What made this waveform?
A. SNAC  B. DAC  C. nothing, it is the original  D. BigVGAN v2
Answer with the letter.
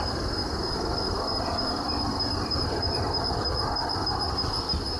C